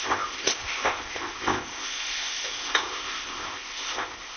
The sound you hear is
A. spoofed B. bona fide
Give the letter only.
A